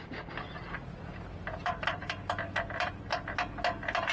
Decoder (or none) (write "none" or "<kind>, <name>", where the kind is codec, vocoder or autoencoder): none